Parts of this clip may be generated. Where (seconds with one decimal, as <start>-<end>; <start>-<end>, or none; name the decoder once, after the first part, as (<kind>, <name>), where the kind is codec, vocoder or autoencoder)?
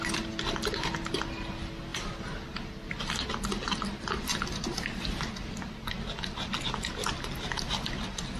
none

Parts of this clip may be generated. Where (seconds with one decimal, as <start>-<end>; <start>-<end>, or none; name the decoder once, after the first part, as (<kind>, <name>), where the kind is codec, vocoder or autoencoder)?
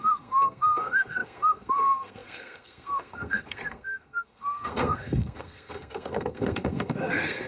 0.0-7.5 (codec, SNAC)